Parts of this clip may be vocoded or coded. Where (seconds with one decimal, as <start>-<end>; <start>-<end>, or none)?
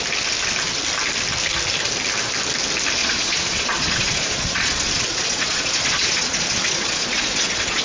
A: 3.0-7.8